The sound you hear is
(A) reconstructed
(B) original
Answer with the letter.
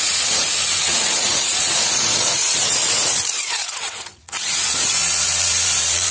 A